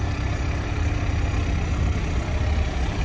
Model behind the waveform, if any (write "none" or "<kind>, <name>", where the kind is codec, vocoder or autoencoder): none